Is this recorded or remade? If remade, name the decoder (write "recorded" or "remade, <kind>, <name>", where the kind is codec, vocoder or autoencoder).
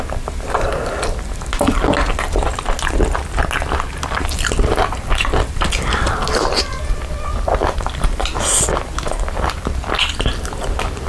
recorded